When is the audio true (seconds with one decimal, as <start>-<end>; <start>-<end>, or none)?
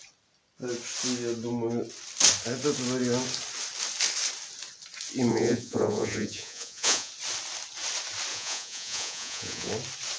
0.0-5.3; 7.1-8.3; 9.7-10.2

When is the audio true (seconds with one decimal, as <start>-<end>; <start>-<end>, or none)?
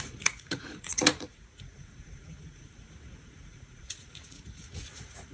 none